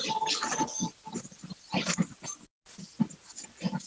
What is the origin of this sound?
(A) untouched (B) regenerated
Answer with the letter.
A